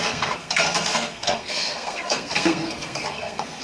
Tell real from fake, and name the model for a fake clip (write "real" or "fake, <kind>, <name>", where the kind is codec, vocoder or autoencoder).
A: fake, codec, SNAC